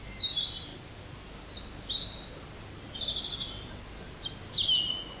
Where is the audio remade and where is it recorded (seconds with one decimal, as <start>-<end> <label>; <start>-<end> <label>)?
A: 0.0-5.2 recorded